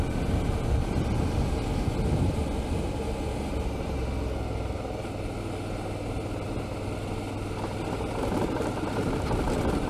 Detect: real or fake real